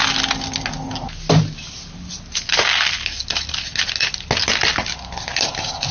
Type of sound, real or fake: real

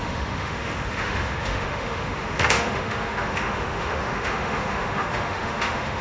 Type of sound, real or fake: fake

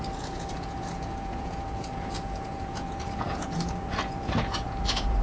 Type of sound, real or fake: fake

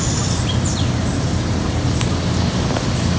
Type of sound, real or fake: real